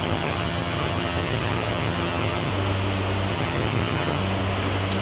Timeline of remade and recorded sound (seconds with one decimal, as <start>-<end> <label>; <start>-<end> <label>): 0.0-2.5 remade; 2.5-3.3 recorded; 3.3-4.2 remade; 4.2-5.0 recorded